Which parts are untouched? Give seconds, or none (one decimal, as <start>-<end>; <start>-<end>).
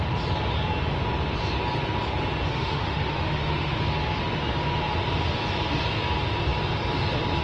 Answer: 0.0-2.5; 3.8-7.4